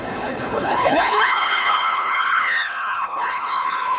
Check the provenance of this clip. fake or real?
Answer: fake